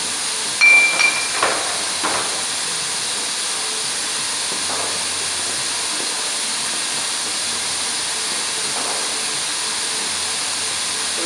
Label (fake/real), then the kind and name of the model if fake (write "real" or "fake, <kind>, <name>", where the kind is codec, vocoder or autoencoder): real